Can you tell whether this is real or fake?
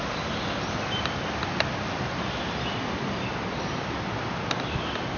real